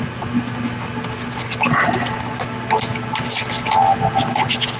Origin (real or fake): real